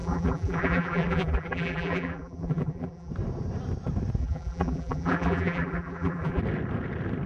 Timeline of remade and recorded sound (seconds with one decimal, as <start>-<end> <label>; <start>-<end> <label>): 0.0-3.1 remade; 3.1-4.2 recorded; 4.2-6.4 remade; 6.4-7.3 recorded